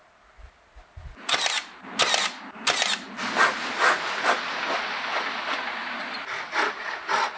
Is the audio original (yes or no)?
yes